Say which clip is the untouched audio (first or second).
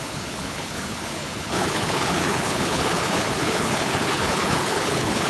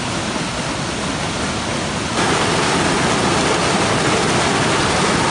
second